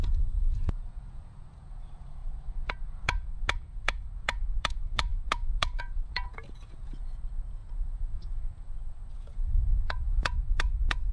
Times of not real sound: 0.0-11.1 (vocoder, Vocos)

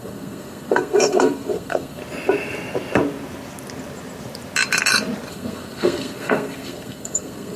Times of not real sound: 0.0-2.0 (codec, SNAC); 5.3-7.6

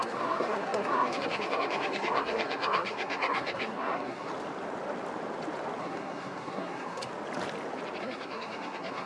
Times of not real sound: 0.0-4.3 (codec, SNAC); 5.8-7.1; 8.0-9.1

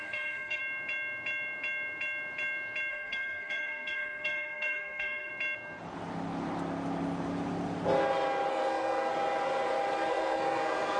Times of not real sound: 0.0-0.6 (codec, SNAC); 2.9-5.3; 8.5-9.1; 10.1-11.0

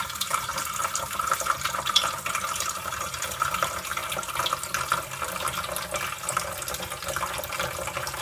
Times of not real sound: 0.0-4.0 (vocoder, BigVGAN v2)

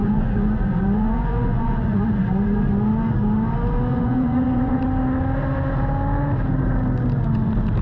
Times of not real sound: 0.0-2.7 (vocoder, Vocos); 3.9-4.8